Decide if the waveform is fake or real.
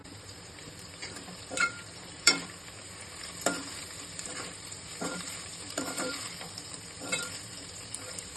fake